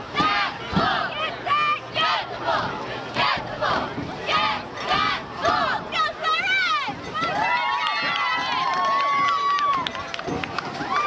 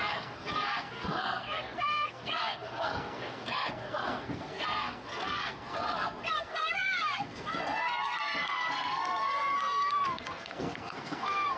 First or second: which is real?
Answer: first